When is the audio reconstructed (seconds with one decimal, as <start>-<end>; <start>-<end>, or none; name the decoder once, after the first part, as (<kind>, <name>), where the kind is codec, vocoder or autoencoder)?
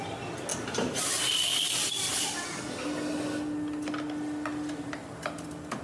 0.5-1.6 (vocoder, BigVGAN v2)